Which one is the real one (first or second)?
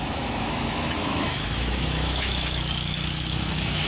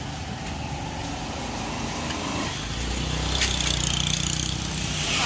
second